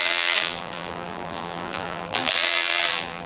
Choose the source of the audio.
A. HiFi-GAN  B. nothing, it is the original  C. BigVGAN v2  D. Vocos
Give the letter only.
C